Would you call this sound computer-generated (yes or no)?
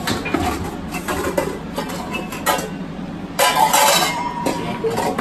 no